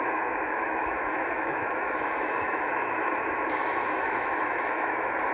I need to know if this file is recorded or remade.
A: remade